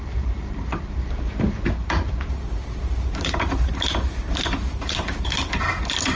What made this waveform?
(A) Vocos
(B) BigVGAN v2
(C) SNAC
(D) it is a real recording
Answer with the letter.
B